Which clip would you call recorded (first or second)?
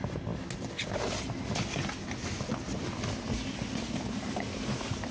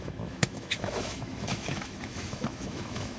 first